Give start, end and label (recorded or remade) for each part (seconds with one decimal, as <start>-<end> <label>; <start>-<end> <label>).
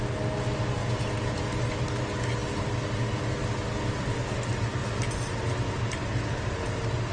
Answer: 0.0-0.8 recorded; 0.8-1.6 remade; 1.6-7.1 recorded